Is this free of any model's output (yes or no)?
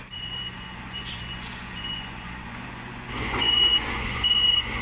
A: no